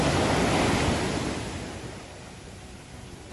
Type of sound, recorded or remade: recorded